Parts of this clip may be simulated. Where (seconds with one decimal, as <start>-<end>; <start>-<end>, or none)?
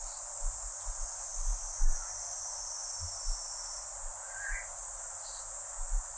none